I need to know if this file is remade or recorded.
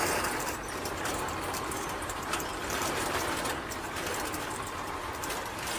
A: remade